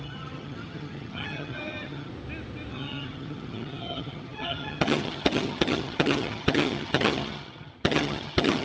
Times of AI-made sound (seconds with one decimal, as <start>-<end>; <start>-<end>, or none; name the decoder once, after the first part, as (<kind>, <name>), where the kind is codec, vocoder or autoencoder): 0.0-2.1 (vocoder, HiFi-GAN); 2.7-8.6